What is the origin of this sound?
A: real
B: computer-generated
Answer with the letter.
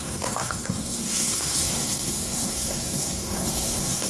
B